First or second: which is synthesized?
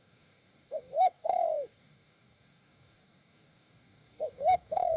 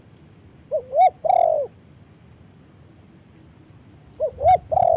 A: first